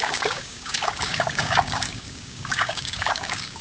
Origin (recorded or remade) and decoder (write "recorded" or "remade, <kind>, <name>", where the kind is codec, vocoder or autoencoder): remade, codec, DAC